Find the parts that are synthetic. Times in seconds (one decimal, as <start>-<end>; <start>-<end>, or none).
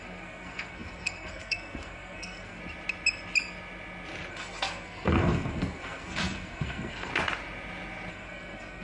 0.0-2.6; 4.3-7.1; 8.1-8.8